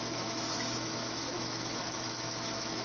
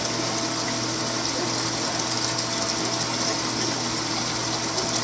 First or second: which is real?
second